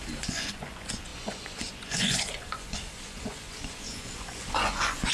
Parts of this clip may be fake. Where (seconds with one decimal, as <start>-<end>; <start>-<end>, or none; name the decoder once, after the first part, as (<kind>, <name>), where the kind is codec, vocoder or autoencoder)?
0.0-5.1 (vocoder, Vocos)

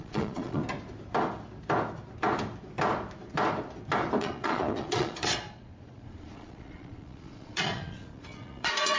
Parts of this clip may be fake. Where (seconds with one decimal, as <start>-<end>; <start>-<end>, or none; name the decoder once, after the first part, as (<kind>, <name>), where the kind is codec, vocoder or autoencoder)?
0.0-0.6 (vocoder, Vocos); 4.2-9.0

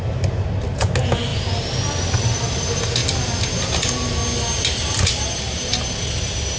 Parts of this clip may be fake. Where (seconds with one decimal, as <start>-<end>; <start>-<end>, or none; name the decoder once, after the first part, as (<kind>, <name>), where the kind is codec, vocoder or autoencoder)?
none